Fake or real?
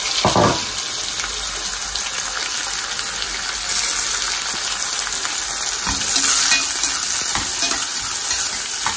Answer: real